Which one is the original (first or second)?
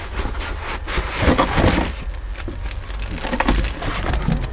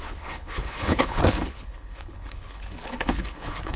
first